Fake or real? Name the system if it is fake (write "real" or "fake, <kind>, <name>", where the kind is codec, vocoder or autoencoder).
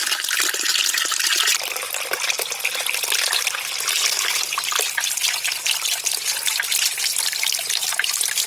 real